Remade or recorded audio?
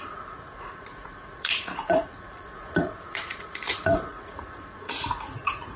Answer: remade